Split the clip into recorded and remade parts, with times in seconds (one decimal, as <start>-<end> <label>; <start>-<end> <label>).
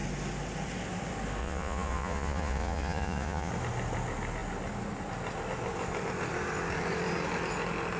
0.0-1.4 recorded; 1.4-3.5 remade; 3.5-8.0 recorded